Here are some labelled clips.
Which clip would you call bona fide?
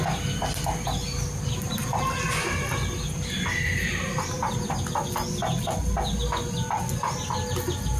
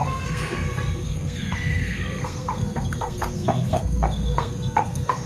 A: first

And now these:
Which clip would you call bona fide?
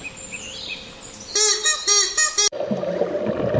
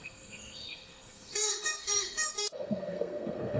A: first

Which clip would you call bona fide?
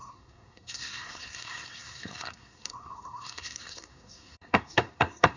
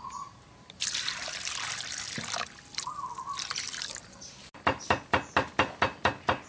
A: second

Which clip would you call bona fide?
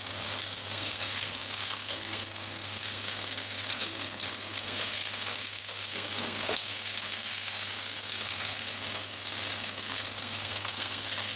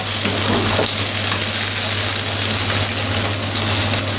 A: second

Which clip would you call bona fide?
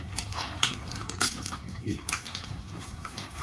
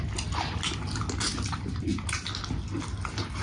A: second